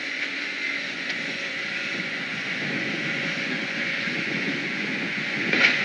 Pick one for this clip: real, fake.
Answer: fake